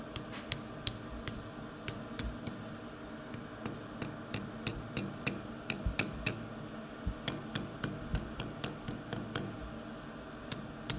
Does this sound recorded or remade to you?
recorded